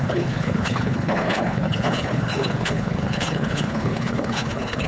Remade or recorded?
remade